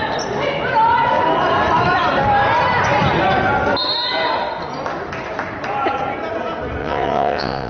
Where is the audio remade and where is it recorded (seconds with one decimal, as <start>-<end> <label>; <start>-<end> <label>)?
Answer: 0.0-6.8 recorded; 6.8-7.7 remade